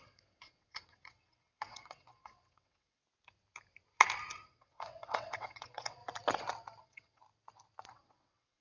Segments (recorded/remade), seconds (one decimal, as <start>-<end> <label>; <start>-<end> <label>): 0.0-3.0 remade; 3.0-4.5 recorded; 4.5-6.0 remade; 6.0-6.8 recorded; 6.8-7.2 remade; 7.2-7.9 recorded; 7.9-8.6 remade